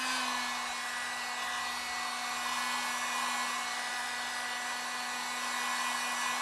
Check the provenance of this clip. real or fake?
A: real